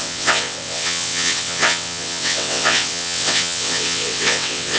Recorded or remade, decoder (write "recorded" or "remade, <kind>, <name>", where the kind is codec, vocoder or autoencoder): remade, vocoder, WaveNeXt